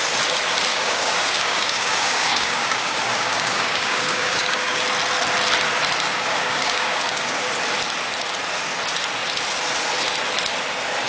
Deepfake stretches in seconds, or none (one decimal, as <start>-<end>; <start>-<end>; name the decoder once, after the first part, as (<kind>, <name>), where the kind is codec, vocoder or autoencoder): 0.7-4.8 (codec, DAC); 6.1-7.5